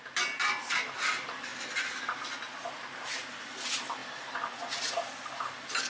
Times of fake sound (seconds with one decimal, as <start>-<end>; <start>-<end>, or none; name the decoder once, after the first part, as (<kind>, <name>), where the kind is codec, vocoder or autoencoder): none

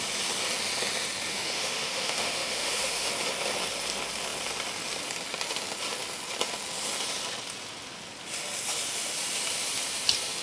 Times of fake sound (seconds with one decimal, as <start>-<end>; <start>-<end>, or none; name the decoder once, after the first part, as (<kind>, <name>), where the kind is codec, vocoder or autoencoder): 1.3-3.1 (autoencoder, DAC-VAE)

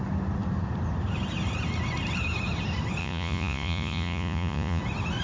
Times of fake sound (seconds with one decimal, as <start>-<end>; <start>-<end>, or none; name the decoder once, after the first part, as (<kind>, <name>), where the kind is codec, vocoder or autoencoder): 3.0-4.8 (vocoder, Vocos)

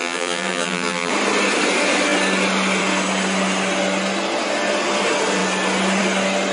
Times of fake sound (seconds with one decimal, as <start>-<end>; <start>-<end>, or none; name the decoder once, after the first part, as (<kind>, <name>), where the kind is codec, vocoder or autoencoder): 0.0-1.1 (vocoder, BigVGAN v2)

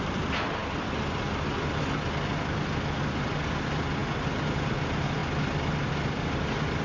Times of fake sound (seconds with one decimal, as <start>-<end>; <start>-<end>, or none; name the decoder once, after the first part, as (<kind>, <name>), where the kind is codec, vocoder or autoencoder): none

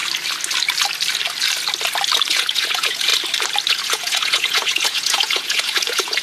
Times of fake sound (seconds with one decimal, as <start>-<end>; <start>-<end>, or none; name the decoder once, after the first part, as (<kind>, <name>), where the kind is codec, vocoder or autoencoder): 2.3-3.1 (vocoder, Vocos); 3.7-6.2

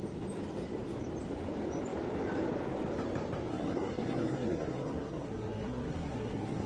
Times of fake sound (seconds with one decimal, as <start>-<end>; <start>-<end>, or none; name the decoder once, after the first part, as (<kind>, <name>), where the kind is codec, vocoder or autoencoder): 3.5-6.7 (codec, SNAC)

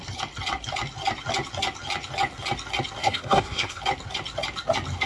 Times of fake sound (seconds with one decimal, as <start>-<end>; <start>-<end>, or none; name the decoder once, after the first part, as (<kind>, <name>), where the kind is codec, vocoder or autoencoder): 3.0-3.8 (codec, SNAC)